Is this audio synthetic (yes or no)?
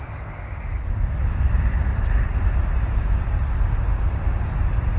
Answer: no